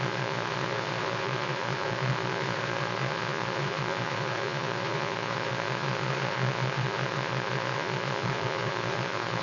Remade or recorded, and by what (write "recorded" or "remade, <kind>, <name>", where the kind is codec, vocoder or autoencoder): remade, vocoder, Vocos